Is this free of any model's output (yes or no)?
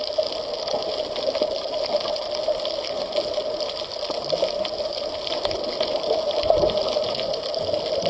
yes